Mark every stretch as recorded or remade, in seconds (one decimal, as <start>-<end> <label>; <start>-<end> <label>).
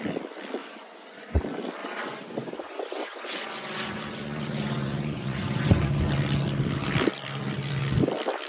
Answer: 0.0-0.6 recorded; 0.6-1.4 remade; 1.4-1.8 recorded; 1.8-5.9 remade; 5.9-8.5 recorded